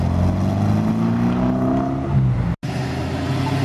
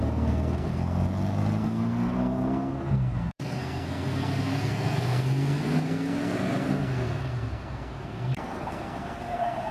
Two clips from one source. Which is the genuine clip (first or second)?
first